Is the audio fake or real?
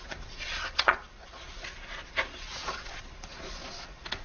fake